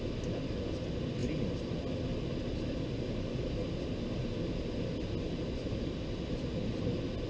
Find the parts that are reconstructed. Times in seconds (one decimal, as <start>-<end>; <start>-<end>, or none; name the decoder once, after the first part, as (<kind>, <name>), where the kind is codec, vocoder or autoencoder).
none